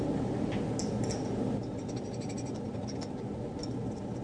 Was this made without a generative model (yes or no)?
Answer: yes